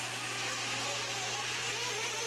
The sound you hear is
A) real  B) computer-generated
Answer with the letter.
A